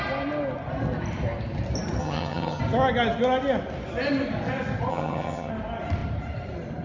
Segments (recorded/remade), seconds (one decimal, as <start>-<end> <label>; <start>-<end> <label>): 0.0-2.0 recorded; 2.0-2.6 remade; 2.6-4.9 recorded; 4.9-5.5 remade; 5.5-6.8 recorded